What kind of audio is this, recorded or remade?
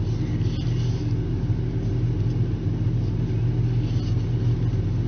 recorded